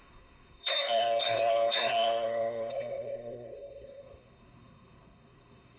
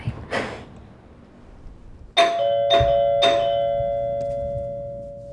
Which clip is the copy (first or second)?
first